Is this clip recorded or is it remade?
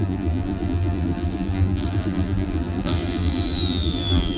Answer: remade